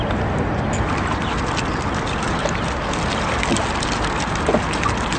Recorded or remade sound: recorded